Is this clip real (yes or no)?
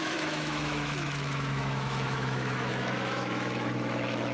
no